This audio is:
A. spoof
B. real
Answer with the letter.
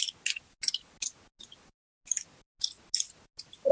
B